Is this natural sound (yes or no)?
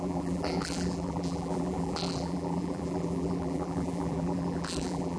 no